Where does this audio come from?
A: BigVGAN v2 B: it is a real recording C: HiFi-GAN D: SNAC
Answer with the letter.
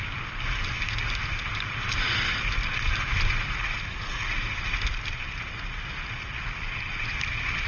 B